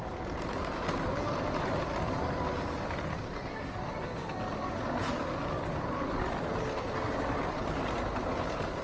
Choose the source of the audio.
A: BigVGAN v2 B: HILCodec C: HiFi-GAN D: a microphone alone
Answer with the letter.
D